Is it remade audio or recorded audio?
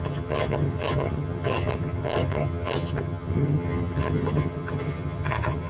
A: remade